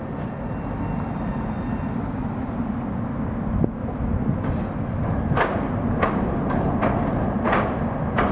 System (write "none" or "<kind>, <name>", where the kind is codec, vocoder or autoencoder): none